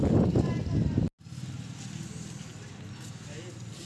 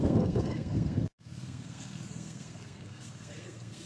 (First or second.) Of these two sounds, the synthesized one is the second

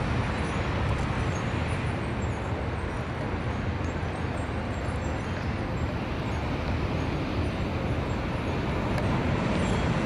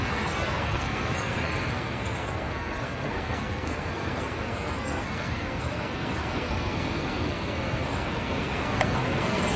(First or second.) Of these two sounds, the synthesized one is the second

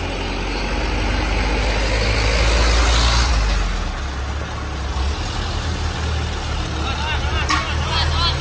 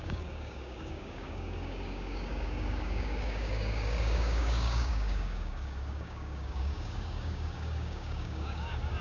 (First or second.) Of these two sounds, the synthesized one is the second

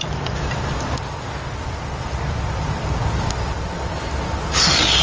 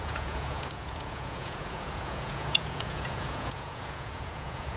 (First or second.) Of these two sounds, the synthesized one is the second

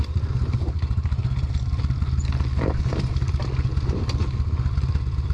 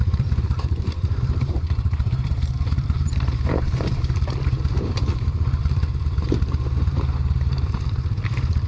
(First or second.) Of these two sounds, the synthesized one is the second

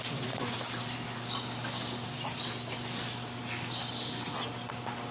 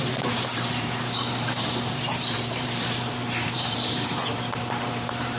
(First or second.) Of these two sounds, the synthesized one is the second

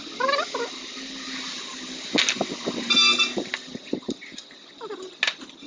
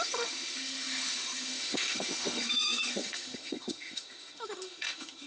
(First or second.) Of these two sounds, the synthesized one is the second